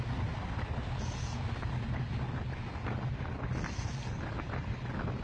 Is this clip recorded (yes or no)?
yes